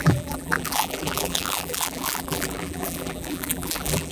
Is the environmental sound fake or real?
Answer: fake